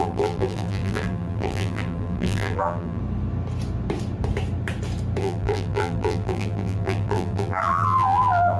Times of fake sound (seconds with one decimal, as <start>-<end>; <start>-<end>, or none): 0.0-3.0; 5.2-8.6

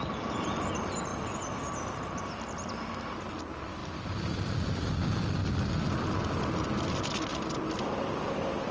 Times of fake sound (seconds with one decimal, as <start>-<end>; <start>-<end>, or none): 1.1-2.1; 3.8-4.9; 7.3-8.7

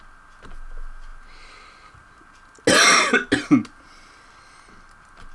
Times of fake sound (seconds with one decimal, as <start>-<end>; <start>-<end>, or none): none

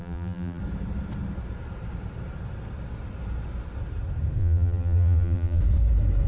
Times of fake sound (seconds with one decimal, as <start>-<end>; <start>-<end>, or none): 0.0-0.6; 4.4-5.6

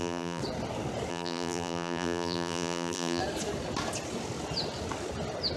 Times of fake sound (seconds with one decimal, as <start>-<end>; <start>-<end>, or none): 0.0-0.4; 1.1-3.2